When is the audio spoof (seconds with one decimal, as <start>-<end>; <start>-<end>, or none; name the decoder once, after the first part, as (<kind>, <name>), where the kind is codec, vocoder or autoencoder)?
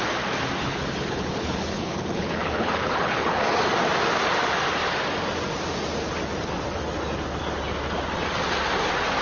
0.6-3.6 (codec, HILCodec)